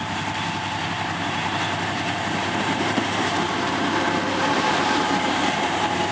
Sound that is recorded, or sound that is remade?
remade